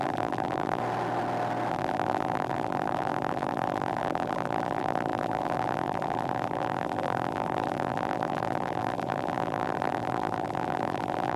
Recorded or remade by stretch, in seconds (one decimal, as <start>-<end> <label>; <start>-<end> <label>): 0.0-0.8 remade; 0.8-1.7 recorded; 1.7-11.4 remade